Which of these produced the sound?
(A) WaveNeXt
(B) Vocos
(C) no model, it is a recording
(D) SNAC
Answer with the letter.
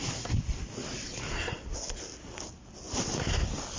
C